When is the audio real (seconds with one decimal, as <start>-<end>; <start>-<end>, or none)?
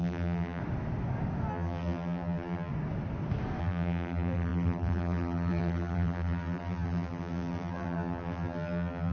0.6-1.5; 2.7-3.6